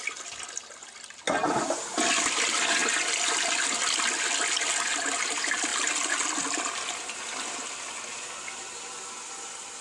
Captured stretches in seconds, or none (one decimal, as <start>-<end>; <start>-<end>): 0.0-9.8